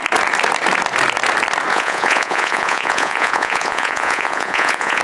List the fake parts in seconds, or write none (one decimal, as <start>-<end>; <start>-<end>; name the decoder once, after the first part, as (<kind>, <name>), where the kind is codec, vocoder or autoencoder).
1.7-5.0 (vocoder, Vocos)